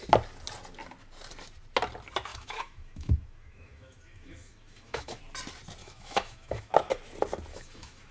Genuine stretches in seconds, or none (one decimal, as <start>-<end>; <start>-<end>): 0.0-2.3; 5.2-5.8; 6.7-7.5